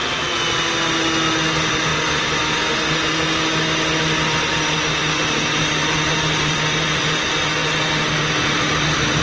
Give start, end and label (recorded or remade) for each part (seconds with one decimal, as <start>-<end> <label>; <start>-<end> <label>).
0.0-5.8 recorded; 5.8-7.0 remade; 7.0-9.2 recorded